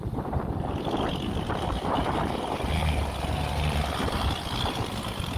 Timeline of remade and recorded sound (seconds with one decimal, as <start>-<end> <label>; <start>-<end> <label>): 0.0-2.8 recorded; 2.8-4.4 remade; 4.4-5.4 recorded